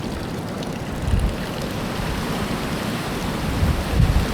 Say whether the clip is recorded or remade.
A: recorded